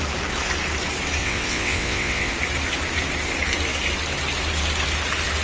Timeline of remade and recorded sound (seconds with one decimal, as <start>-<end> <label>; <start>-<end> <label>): 0.0-1.2 recorded; 1.2-2.3 remade; 2.3-5.4 recorded

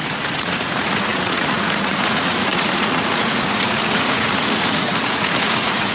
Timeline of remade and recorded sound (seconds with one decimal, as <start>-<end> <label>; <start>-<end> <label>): 0.0-5.9 remade

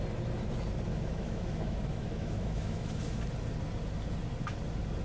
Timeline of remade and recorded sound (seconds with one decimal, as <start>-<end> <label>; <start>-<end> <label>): 0.0-0.9 recorded; 0.9-3.2 remade; 3.2-5.0 recorded

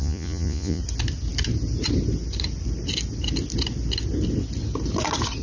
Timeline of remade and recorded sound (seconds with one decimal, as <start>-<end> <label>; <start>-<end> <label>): 0.0-0.8 remade; 0.8-5.4 recorded

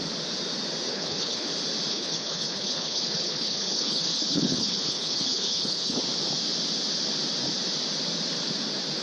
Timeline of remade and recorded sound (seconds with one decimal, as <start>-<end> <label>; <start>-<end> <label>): 0.0-0.9 recorded; 0.9-1.5 remade; 1.5-1.9 recorded; 1.9-6.0 remade; 6.0-9.0 recorded

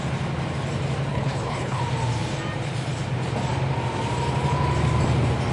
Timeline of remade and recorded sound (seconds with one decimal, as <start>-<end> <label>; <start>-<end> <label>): 0.0-1.1 recorded; 1.1-1.8 remade; 1.8-5.5 recorded

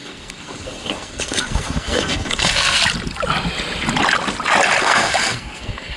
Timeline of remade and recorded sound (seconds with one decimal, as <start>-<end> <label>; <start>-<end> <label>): 0.0-2.8 remade; 2.8-4.8 recorded; 4.8-6.0 remade

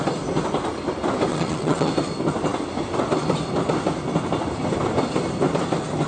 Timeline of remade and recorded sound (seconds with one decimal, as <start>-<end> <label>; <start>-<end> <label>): 0.0-1.3 recorded; 1.3-1.9 remade; 1.9-6.1 recorded